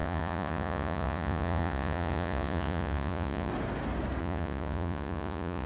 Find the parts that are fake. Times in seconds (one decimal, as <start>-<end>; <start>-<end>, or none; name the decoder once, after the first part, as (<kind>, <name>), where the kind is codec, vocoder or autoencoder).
0.0-3.5 (vocoder, Vocos); 4.2-5.7